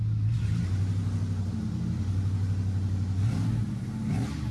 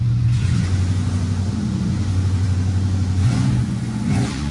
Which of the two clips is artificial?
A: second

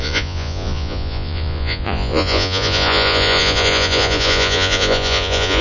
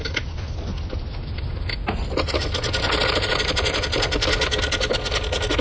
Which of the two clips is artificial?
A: first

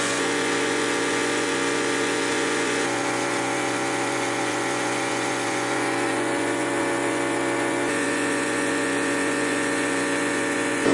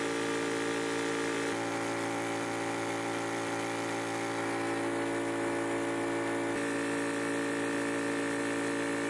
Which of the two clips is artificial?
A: first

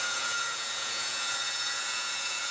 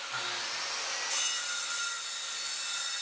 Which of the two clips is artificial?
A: first